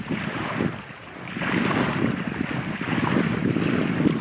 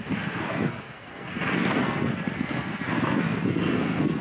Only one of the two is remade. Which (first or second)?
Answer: second